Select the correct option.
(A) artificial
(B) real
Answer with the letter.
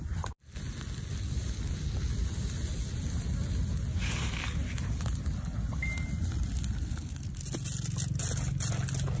B